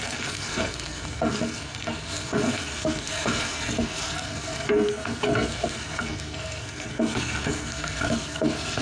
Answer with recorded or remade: remade